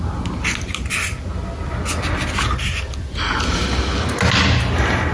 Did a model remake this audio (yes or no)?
no